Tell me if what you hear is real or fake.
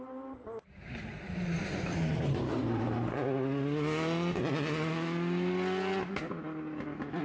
real